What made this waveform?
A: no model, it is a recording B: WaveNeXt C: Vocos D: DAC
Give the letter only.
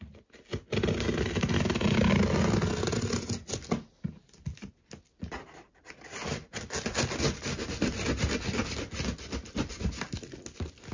A